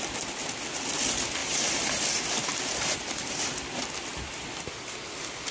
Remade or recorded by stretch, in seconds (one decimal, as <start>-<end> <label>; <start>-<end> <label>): 0.0-1.4 recorded; 1.4-2.0 remade; 2.0-2.5 recorded; 2.5-3.4 remade; 3.4-5.5 recorded